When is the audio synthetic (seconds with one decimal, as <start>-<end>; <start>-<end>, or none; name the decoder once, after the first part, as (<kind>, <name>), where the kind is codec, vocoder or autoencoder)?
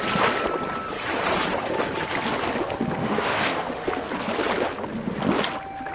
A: 3.0-3.9 (autoencoder, DAC-VAE)